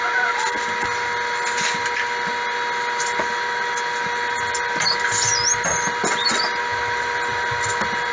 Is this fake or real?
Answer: real